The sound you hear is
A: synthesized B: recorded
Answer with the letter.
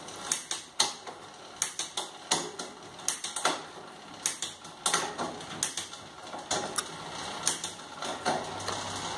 B